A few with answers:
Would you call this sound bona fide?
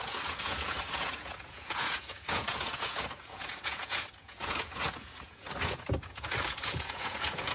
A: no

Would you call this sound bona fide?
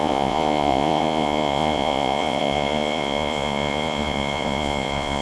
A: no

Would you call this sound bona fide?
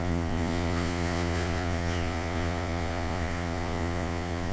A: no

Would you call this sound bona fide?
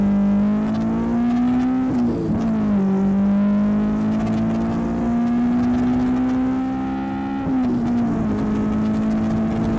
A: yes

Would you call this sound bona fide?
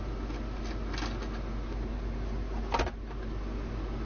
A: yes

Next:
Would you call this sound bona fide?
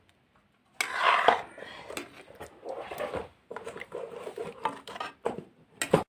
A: yes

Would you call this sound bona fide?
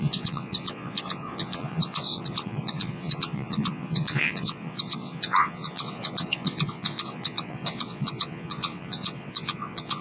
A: no